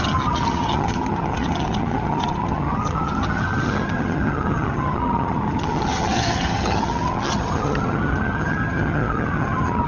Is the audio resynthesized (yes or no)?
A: yes